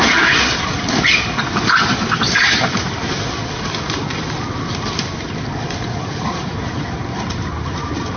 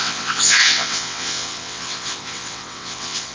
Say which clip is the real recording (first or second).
first